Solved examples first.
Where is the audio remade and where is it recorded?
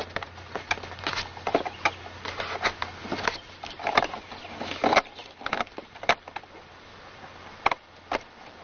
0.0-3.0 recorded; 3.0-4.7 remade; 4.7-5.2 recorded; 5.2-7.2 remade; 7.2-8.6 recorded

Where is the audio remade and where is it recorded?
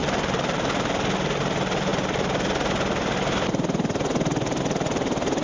0.0-0.9 remade; 0.9-5.4 recorded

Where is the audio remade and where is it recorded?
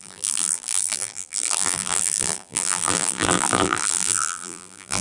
0.0-5.0 remade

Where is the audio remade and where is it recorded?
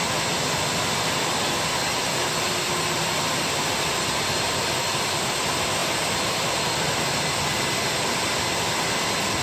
0.0-3.0 remade; 3.0-3.9 recorded; 3.9-9.4 remade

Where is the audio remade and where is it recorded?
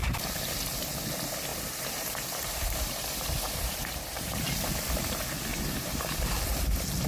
0.0-0.8 remade; 0.8-1.5 recorded; 1.5-4.7 remade; 4.7-5.5 recorded; 5.5-6.4 remade; 6.4-7.1 recorded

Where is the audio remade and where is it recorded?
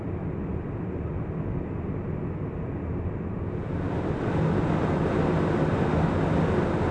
0.0-6.9 recorded